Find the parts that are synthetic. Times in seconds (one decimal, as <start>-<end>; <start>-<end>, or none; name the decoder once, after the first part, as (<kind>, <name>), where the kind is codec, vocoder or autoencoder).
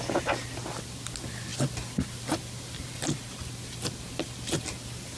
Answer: none